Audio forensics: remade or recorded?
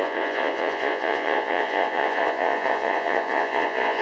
remade